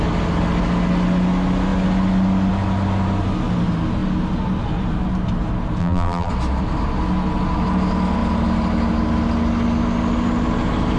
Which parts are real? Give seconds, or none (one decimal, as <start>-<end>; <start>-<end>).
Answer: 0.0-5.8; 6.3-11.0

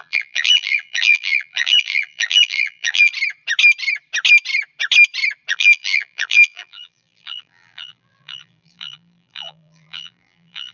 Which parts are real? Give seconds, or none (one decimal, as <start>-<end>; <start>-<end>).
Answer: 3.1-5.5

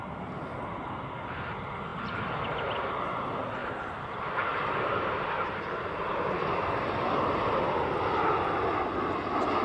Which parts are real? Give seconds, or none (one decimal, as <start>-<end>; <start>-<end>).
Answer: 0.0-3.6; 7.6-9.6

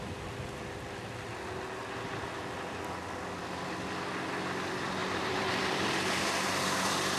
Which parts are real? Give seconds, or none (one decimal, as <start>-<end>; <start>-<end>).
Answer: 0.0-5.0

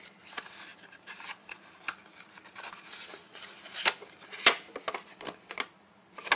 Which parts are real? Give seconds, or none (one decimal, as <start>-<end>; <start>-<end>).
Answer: 0.0-0.7; 1.8-6.4

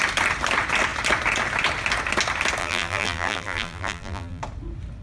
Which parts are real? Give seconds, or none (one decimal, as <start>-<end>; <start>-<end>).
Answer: 0.0-2.6; 4.4-5.0

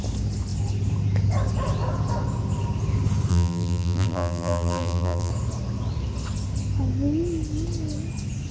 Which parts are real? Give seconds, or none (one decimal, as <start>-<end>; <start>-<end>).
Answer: 0.0-3.3; 5.3-8.5